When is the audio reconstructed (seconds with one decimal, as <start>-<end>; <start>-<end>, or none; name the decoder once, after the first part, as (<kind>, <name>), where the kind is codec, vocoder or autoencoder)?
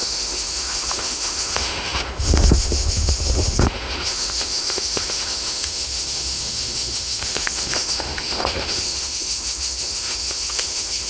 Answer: 0.0-11.1 (autoencoder, DAC-VAE)